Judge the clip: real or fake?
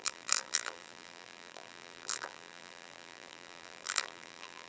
fake